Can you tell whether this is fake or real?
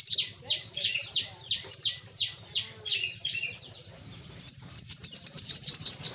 fake